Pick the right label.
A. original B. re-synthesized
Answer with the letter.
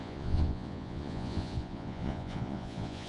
B